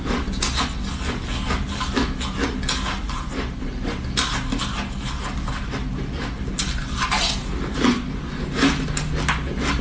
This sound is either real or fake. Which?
real